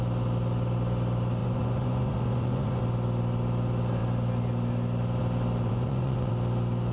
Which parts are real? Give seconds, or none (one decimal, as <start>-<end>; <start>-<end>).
0.0-1.4; 2.8-5.7; 6.3-6.9